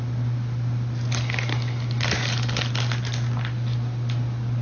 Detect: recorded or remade recorded